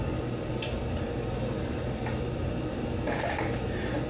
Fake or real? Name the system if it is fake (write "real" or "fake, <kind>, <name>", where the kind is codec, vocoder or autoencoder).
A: real